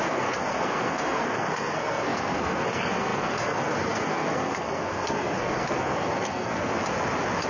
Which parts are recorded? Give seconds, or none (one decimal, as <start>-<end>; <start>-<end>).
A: 6.7-7.5